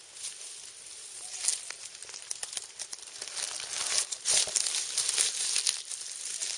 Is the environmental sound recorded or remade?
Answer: recorded